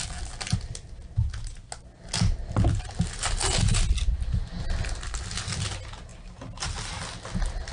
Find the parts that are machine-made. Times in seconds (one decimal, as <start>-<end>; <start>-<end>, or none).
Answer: none